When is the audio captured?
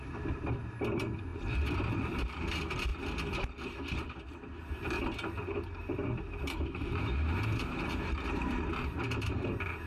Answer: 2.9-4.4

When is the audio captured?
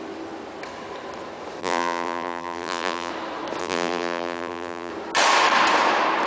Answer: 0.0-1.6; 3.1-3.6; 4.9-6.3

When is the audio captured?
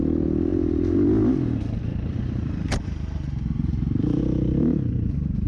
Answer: 0.0-1.9; 4.2-5.5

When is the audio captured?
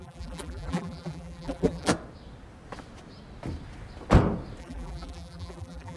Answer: 1.9-4.6